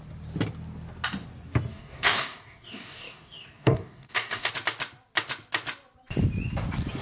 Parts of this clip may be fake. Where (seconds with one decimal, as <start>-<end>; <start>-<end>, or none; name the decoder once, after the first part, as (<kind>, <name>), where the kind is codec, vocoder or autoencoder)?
1.7-4.5 (codec, DAC)